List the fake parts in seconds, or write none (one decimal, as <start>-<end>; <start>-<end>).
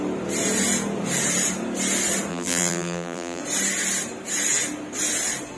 2.3-3.4